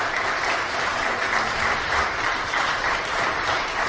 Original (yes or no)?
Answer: no